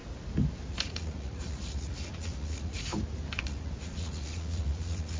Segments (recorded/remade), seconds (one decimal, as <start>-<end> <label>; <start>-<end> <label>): 0.0-0.7 recorded; 0.7-2.9 remade; 2.9-3.4 recorded; 3.4-5.2 remade

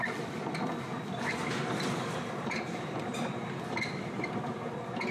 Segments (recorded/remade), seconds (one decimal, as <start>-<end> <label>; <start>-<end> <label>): 0.0-5.1 remade

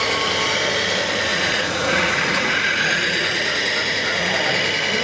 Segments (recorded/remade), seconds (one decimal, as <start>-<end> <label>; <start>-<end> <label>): 0.0-1.3 recorded; 1.3-4.3 remade; 4.3-5.0 recorded

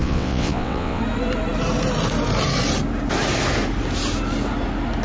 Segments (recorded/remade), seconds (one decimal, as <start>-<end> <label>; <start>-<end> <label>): 0.0-1.0 remade; 1.0-5.0 recorded

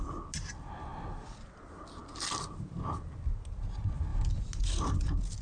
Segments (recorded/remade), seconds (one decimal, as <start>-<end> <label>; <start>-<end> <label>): 0.0-5.4 recorded

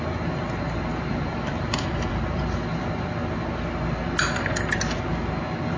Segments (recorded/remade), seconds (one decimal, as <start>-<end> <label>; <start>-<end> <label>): 0.0-0.9 recorded; 0.9-2.4 remade; 2.4-5.8 recorded